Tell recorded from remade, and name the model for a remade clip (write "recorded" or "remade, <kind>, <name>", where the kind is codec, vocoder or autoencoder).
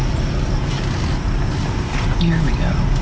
recorded